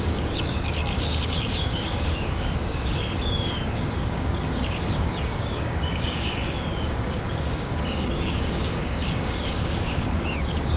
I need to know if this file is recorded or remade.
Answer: remade